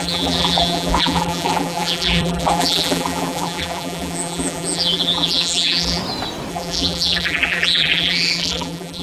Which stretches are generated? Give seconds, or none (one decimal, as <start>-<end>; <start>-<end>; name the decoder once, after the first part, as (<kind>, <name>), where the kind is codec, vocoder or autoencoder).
0.0-6.0 (vocoder, BigVGAN v2); 6.5-9.0